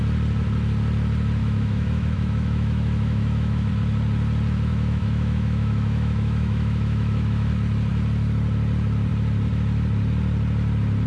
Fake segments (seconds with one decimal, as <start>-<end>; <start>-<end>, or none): 1.4-3.7; 4.7-7.5